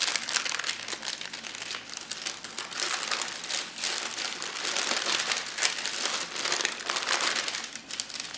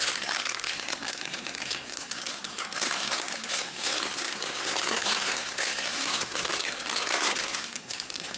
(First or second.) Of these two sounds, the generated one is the second